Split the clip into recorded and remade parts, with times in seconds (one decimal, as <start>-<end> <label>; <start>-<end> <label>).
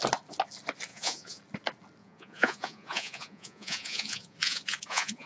0.0-0.9 recorded; 0.9-1.4 remade; 1.4-2.0 recorded; 2.0-5.3 remade